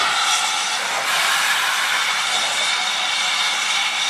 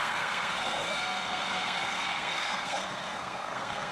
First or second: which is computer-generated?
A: second